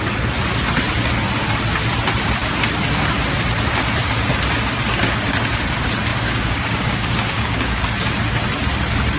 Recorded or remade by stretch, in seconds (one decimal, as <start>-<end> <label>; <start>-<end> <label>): 0.0-6.1 recorded; 6.1-7.8 remade; 7.8-9.2 recorded

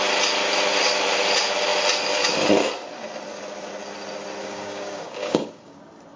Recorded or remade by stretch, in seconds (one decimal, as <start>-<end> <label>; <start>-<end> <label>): 0.0-4.4 recorded; 4.4-5.8 remade; 5.8-6.2 recorded

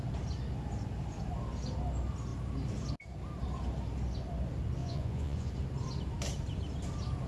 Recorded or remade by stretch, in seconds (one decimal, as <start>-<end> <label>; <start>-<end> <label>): 0.0-4.8 recorded; 4.8-5.5 remade; 5.5-7.3 recorded

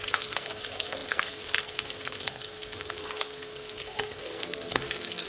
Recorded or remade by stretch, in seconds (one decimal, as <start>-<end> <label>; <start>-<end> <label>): 0.0-5.3 remade

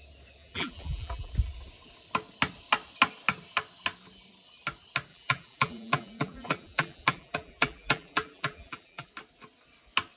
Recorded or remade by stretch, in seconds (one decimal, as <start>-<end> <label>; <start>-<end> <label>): 0.0-0.4 recorded; 0.4-1.3 remade; 1.3-5.1 recorded; 5.1-9.1 remade; 9.1-10.2 recorded

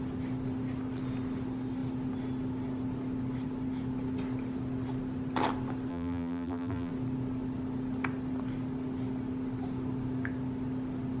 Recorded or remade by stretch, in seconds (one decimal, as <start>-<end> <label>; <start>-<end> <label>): 0.0-5.9 recorded; 5.9-6.9 remade; 6.9-11.2 recorded